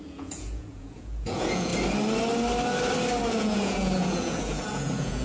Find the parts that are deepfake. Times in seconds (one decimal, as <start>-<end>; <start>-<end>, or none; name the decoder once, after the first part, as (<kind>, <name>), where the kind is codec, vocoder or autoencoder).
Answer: 0.0-1.7 (vocoder, Vocos); 3.3-5.2

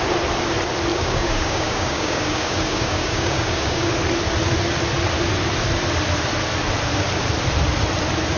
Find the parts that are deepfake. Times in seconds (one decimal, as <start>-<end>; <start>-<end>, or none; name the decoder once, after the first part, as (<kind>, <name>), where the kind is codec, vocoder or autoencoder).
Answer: 0.9-3.9 (codec, DAC)

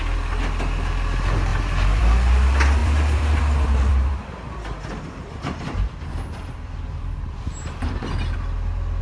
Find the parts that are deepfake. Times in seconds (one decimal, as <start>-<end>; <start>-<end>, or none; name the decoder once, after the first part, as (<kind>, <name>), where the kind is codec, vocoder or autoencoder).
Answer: 2.8-3.4 (vocoder, BigVGAN v2); 3.9-7.4

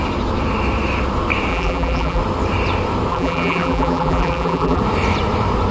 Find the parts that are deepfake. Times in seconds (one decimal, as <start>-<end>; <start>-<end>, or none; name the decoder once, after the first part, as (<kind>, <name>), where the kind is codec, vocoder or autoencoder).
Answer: 1.5-2.2 (vocoder, BigVGAN v2); 3.1-4.8

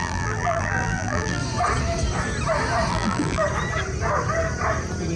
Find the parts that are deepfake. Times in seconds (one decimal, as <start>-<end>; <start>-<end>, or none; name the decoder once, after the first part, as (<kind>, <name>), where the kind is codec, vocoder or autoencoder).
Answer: 0.0-1.4 (vocoder, BigVGAN v2); 2.9-3.4

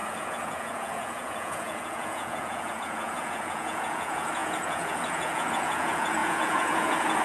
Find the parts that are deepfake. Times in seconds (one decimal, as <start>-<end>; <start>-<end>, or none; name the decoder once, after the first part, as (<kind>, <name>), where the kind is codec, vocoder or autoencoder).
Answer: 0.0-7.2 (vocoder, Vocos)